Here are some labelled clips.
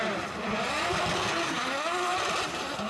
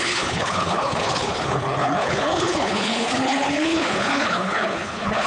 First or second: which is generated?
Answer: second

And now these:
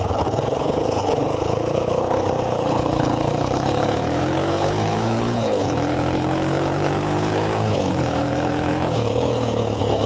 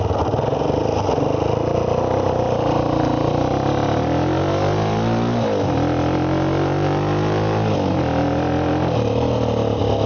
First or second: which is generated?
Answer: first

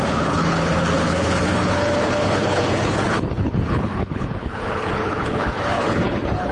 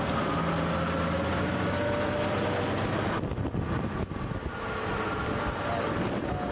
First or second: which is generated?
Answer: first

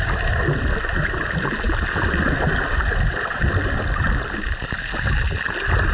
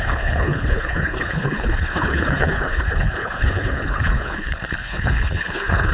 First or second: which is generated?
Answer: second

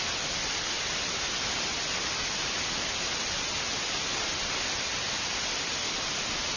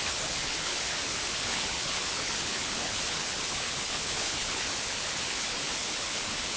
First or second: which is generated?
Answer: second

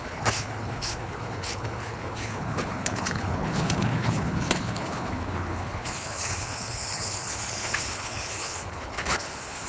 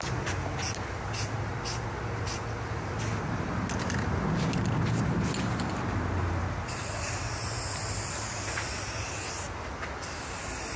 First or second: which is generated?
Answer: first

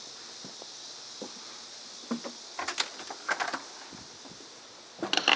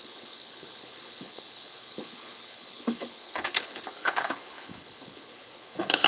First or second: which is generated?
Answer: second